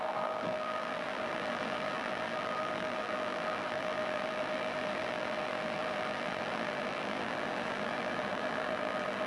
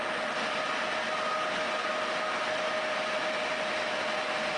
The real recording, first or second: second